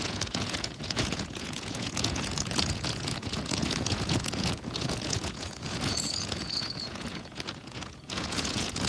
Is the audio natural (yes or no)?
no